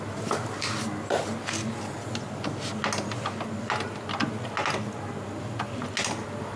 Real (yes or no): yes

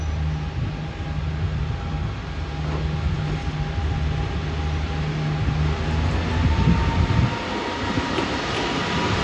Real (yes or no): yes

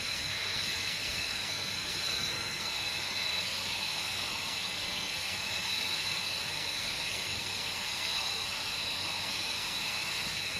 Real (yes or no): no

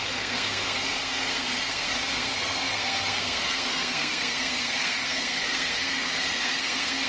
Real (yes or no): no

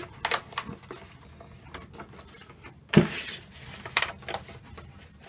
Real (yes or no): yes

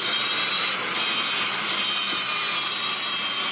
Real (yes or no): yes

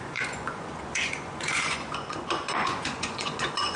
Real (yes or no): no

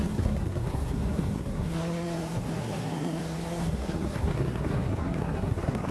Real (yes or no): no